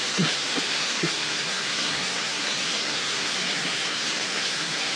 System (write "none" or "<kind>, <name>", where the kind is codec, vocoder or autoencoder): codec, SNAC